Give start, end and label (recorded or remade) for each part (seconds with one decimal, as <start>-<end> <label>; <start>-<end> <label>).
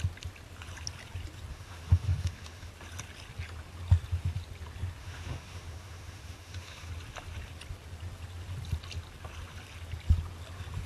0.0-1.5 recorded; 1.5-2.7 remade; 2.7-5.0 recorded; 5.0-6.9 remade; 6.9-10.9 recorded